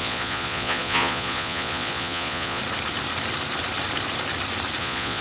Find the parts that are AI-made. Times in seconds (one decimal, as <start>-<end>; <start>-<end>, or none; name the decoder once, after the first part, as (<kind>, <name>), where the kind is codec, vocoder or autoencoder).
0.0-2.6 (vocoder, Vocos); 4.8-5.2

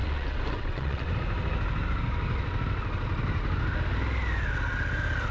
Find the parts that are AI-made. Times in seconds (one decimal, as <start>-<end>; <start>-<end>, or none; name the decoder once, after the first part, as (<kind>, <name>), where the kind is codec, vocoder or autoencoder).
0.0-1.1 (vocoder, WaveNeXt)

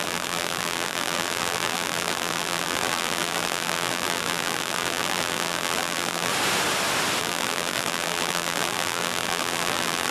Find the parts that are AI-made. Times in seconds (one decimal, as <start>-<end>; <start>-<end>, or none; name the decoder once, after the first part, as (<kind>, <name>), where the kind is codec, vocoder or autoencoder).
0.0-6.3 (vocoder, BigVGAN v2); 7.2-10.1

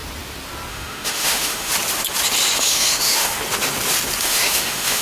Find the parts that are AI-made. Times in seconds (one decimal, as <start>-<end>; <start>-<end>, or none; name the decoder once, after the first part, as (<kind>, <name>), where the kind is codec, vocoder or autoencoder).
0.7-1.7 (autoencoder, DAC-VAE); 2.6-3.3; 4.2-5.0

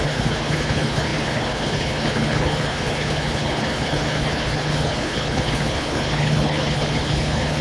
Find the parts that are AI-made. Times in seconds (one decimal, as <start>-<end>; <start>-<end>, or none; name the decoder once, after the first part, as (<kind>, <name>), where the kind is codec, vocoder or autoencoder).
0.0-7.6 (codec, HILCodec)

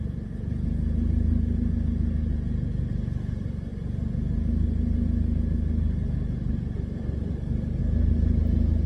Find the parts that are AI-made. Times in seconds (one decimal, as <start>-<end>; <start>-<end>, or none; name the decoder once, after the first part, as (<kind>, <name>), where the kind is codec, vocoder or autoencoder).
none